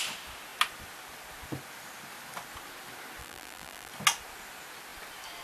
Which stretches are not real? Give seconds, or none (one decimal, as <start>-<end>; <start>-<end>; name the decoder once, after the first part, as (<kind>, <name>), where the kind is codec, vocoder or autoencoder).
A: 3.2-3.9 (vocoder, BigVGAN v2)